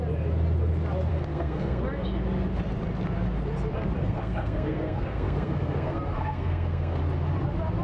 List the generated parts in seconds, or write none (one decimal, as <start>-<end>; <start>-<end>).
1.1-1.8; 4.0-7.0